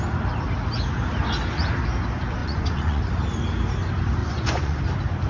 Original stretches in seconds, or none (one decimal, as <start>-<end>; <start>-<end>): 0.0-2.4; 3.0-4.2; 4.8-5.3